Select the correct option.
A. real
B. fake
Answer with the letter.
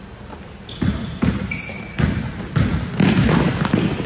A